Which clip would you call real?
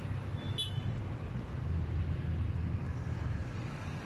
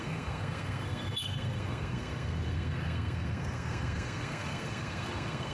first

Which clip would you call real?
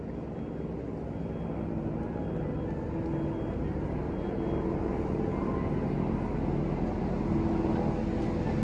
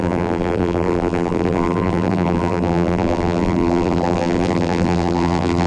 first